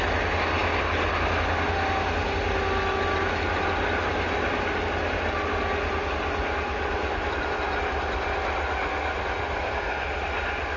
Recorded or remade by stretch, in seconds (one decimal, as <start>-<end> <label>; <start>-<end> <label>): 0.0-10.8 recorded